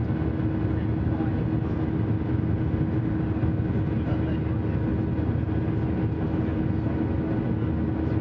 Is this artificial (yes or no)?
no